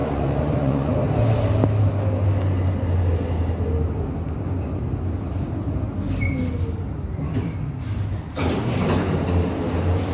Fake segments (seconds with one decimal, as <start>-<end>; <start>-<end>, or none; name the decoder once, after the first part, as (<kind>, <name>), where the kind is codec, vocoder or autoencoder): 0.0-0.9 (vocoder, Vocos)